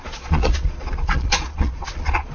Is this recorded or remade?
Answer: remade